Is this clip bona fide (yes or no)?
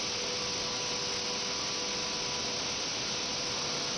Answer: yes